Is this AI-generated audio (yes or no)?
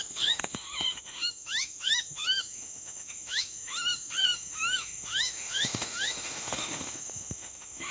yes